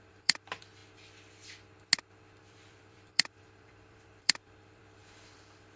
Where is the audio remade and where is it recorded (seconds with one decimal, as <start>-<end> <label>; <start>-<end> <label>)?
0.0-0.8 remade; 0.8-2.4 recorded; 2.4-5.8 remade